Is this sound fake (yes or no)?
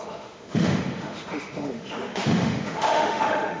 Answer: yes